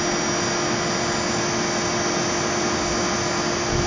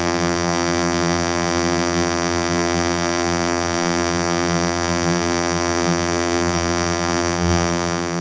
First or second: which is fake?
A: second